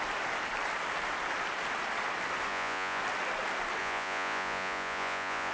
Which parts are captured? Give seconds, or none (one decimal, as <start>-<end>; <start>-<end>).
0.0-2.5; 3.0-3.8